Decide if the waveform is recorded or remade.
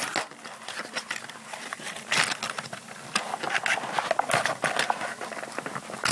recorded